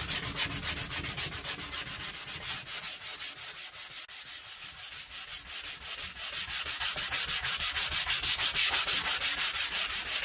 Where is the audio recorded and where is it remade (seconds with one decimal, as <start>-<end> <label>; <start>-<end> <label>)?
0.0-10.2 recorded